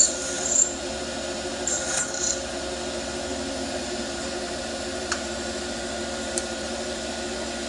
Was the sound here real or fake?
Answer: fake